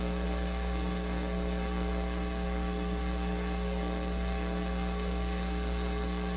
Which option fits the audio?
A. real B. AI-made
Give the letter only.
B